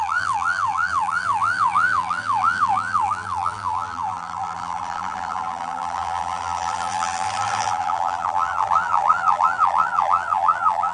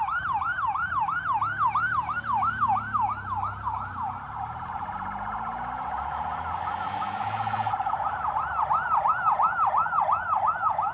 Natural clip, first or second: second